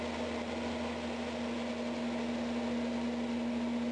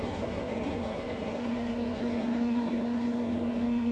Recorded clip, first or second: first